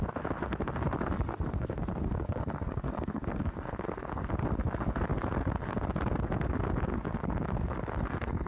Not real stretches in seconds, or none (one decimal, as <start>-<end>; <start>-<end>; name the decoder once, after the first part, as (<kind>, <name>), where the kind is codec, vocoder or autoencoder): 1.3-4.3 (codec, SNAC); 6.9-8.5